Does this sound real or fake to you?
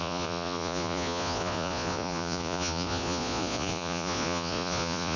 fake